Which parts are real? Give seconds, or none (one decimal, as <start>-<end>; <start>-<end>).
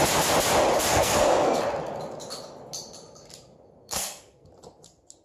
0.0-0.9; 1.6-3.8; 4.5-5.2